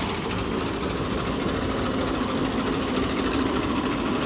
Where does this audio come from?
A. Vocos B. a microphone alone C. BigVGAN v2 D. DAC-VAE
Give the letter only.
B